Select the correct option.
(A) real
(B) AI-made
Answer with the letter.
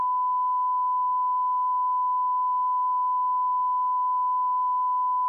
A